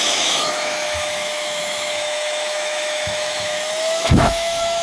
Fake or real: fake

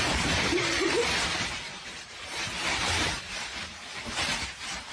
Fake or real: fake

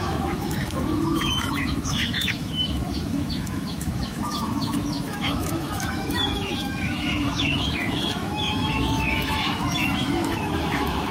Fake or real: fake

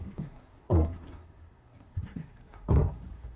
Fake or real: fake